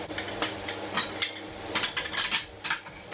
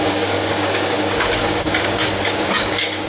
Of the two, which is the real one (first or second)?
first